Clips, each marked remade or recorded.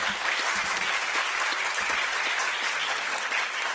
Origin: recorded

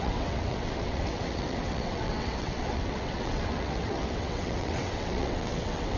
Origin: remade